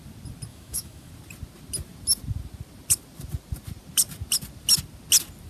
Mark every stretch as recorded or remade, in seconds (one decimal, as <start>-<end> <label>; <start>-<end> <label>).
0.0-0.5 recorded; 0.5-1.1 remade; 1.1-5.5 recorded